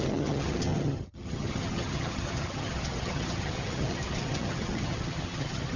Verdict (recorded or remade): remade